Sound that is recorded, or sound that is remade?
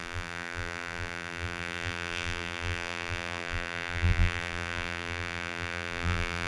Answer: remade